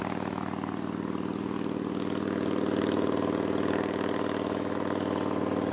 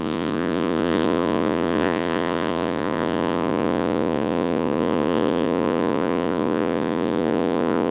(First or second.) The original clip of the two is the first